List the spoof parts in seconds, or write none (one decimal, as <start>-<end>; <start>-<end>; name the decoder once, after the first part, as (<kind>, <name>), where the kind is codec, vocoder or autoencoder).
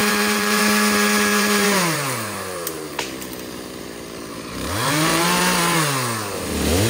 0.0-0.6 (vocoder, BigVGAN v2); 1.3-5.4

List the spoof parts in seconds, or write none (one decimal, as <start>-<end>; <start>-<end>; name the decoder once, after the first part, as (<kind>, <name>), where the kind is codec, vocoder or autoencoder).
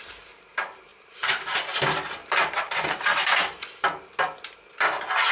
0.9-1.6 (vocoder, BigVGAN v2); 2.2-3.4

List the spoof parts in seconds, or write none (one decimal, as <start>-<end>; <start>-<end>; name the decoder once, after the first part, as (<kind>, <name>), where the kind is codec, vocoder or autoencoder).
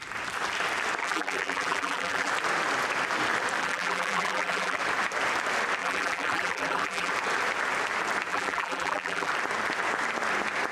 1.0-2.3 (vocoder, BigVGAN v2); 3.6-4.8; 5.8-7.1; 8.3-9.3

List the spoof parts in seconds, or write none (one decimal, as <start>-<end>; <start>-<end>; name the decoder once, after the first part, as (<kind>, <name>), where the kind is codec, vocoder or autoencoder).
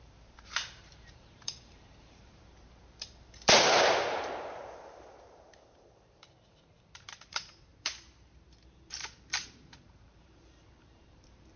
0.0-11.6 (vocoder, BigVGAN v2)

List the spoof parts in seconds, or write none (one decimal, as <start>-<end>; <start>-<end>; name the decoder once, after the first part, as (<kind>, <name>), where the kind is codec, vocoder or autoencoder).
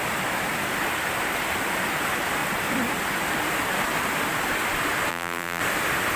5.1-5.6 (vocoder, BigVGAN v2)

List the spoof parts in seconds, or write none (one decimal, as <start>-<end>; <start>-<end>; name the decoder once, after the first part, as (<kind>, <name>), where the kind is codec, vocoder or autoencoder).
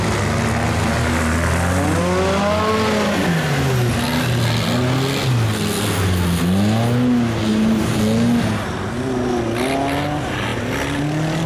7.5-8.0 (vocoder, BigVGAN v2)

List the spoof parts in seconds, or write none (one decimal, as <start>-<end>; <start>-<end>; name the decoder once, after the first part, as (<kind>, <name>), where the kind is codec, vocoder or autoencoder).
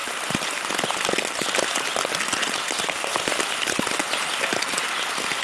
none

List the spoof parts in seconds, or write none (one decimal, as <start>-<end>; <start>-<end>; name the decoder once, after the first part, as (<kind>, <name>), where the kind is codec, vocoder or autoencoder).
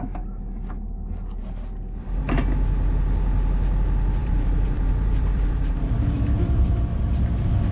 4.2-7.1 (vocoder, BigVGAN v2)